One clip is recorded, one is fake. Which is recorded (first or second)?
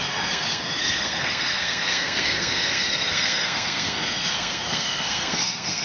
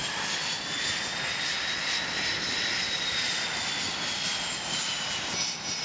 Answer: second